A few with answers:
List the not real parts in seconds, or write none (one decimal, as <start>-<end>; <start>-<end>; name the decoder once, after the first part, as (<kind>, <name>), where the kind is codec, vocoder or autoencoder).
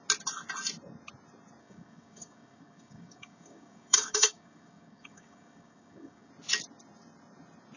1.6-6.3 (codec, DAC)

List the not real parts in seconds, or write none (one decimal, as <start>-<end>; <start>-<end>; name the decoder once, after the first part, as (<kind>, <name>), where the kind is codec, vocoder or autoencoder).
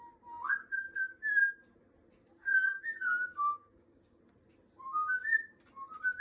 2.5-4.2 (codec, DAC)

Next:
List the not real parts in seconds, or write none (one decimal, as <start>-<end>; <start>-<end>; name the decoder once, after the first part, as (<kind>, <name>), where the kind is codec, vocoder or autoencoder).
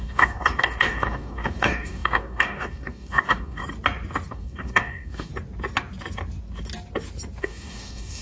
0.0-3.6 (codec, DAC); 4.3-5.3; 7.4-8.2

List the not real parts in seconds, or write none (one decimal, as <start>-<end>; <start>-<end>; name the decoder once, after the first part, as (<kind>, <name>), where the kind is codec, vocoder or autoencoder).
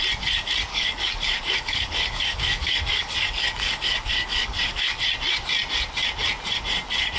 0.7-5.0 (codec, DAC)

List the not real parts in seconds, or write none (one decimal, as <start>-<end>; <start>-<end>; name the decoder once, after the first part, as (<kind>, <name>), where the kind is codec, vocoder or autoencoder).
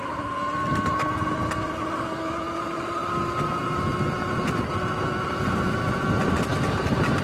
none